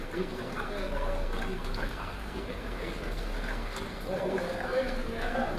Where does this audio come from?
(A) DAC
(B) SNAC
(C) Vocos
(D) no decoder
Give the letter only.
B